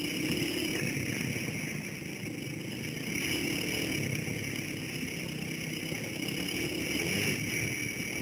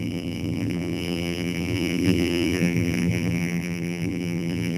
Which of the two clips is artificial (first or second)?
second